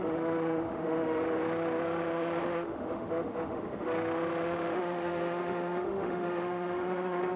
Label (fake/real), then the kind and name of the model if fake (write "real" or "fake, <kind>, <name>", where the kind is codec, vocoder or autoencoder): fake, autoencoder, DAC-VAE